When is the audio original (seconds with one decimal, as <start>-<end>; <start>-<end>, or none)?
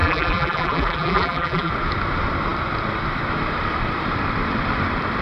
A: 1.7-5.2